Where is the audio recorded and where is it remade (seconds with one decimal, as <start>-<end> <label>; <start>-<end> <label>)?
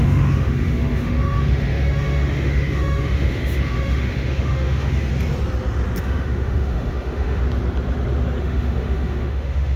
0.0-5.1 remade; 5.1-6.0 recorded; 6.0-7.4 remade; 7.4-8.4 recorded; 8.4-9.8 remade